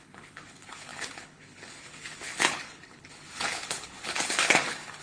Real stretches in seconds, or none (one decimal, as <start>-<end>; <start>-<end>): none